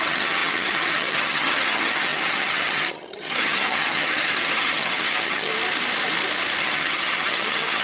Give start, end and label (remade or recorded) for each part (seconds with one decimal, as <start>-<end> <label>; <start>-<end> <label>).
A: 0.0-5.5 remade; 5.5-6.6 recorded; 6.6-7.8 remade

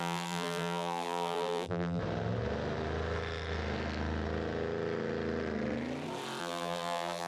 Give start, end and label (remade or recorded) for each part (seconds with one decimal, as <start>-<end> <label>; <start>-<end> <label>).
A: 0.0-2.0 remade; 2.0-6.4 recorded; 6.4-7.3 remade

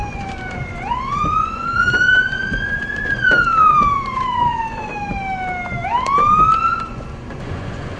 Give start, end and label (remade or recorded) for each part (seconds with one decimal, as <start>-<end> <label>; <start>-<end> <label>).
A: 0.0-4.9 remade; 4.9-6.6 recorded; 6.6-8.0 remade

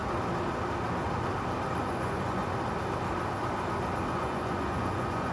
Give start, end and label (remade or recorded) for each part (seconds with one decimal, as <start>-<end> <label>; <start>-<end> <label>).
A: 0.0-1.8 recorded; 1.8-2.4 remade; 2.4-4.1 recorded; 4.1-5.3 remade

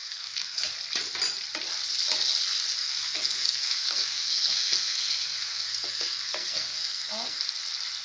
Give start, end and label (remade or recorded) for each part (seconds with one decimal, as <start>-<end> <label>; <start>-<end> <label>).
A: 0.0-0.6 remade; 0.6-2.8 recorded; 2.8-7.4 remade; 7.4-8.0 recorded

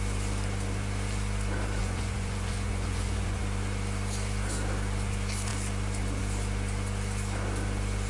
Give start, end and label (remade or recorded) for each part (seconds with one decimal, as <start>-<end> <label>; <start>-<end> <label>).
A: 0.0-1.8 recorded; 1.8-3.4 remade; 3.4-8.1 recorded